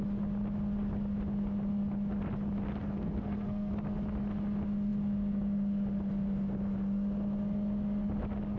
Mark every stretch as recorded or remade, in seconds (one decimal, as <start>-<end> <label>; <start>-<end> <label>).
0.0-2.8 recorded; 2.8-3.7 remade; 3.7-8.6 recorded